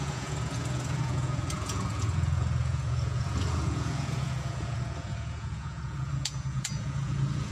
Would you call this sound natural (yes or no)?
no